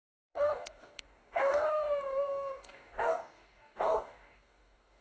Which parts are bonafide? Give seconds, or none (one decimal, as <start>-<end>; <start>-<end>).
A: none